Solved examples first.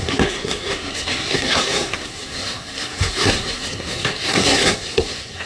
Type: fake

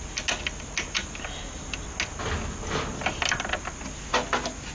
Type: real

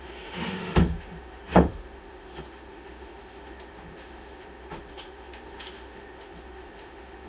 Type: fake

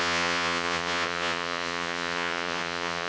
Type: fake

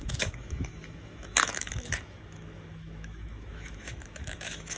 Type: fake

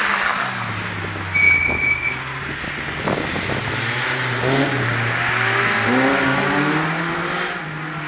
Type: real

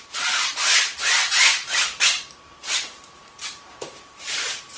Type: fake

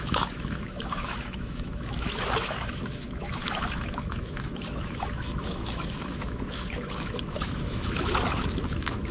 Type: fake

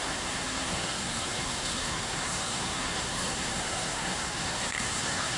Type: fake